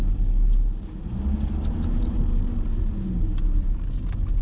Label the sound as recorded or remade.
recorded